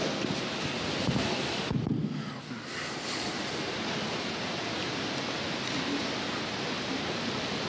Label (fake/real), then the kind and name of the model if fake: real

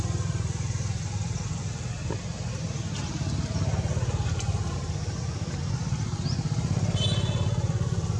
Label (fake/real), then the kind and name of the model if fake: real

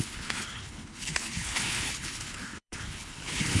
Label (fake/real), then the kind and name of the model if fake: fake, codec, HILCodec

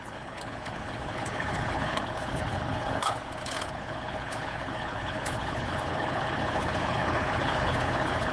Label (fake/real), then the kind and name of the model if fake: fake, codec, HILCodec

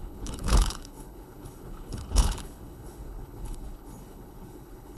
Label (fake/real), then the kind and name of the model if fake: fake, codec, HILCodec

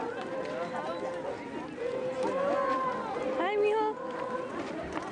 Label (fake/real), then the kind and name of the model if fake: real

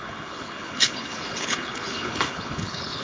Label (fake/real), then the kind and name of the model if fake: fake, codec, HILCodec